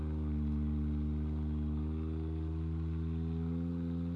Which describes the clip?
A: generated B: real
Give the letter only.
B